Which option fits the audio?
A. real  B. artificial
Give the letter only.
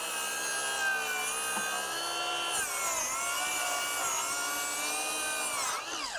A